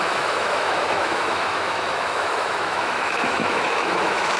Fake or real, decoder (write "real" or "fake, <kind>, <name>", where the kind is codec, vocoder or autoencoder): fake, autoencoder, DAC-VAE